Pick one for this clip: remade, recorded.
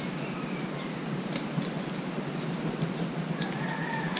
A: recorded